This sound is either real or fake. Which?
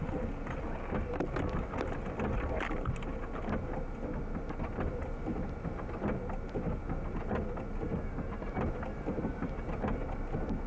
real